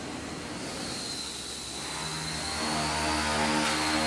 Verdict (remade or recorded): recorded